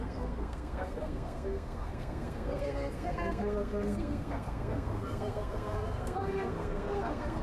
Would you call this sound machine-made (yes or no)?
yes